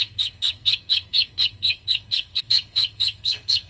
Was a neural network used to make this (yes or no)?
yes